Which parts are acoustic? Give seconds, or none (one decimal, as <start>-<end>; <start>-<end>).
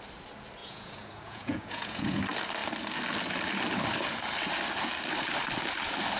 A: 0.0-0.6; 2.2-6.2